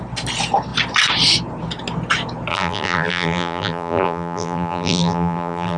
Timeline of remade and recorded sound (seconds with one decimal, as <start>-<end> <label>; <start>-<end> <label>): 0.0-2.5 recorded; 2.5-5.8 remade